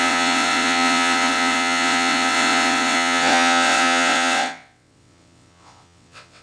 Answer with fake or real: fake